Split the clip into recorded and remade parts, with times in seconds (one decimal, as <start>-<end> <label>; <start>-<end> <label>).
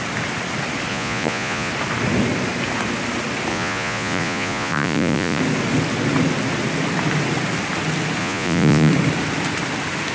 0.0-0.9 recorded; 0.9-1.7 remade; 1.7-3.5 recorded; 3.5-5.4 remade; 5.4-8.2 recorded; 8.2-8.9 remade; 8.9-10.1 recorded